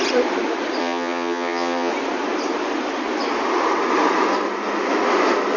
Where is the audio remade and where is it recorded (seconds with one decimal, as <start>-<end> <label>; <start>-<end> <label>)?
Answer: 0.0-0.8 recorded; 0.8-1.9 remade; 1.9-5.6 recorded